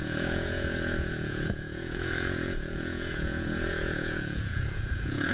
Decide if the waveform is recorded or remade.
remade